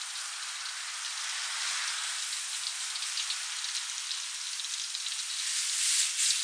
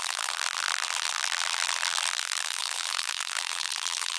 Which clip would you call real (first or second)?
first